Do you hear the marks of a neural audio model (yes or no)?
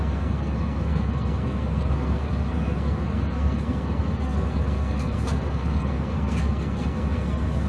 yes